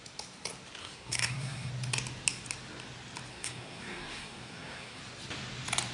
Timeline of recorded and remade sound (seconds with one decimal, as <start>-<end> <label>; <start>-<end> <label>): 0.0-0.8 recorded; 0.8-1.7 remade; 1.7-3.3 recorded; 3.3-5.0 remade; 5.0-5.9 recorded